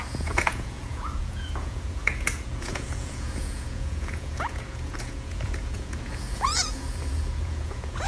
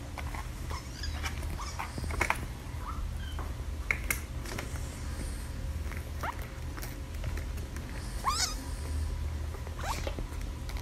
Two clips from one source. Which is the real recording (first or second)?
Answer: second